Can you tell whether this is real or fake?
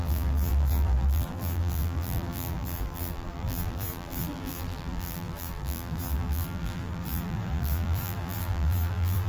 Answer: fake